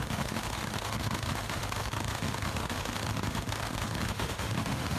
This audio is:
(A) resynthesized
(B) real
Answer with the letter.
A